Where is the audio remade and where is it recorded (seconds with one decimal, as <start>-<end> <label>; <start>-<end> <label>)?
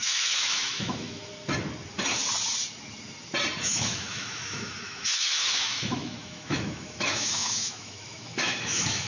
0.0-1.3 remade; 1.3-3.6 recorded; 3.6-9.1 remade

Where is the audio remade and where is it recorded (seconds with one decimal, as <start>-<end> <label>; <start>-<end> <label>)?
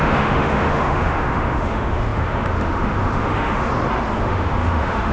0.0-3.7 remade; 3.7-4.2 recorded; 4.2-5.1 remade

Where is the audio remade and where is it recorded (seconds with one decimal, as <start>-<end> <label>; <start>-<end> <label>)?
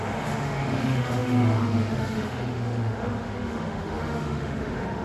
0.0-5.0 remade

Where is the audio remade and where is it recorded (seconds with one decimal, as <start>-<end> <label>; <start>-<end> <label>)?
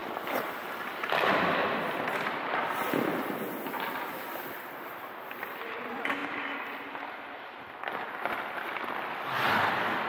0.0-10.1 recorded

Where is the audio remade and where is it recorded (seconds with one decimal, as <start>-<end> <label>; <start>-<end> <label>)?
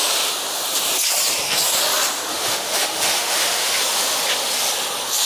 0.0-2.3 recorded; 2.3-3.8 remade; 3.8-5.2 recorded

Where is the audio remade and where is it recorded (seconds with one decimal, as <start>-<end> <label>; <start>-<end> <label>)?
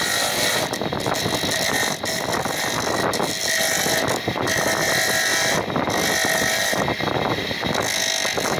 0.0-8.6 recorded